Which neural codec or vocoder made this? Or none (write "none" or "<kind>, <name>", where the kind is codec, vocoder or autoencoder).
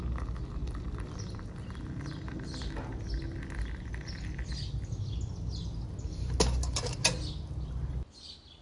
none